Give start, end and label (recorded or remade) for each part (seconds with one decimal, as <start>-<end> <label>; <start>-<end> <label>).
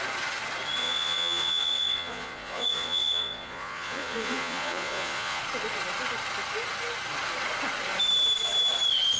0.0-0.8 recorded; 0.8-5.4 remade; 5.4-9.2 recorded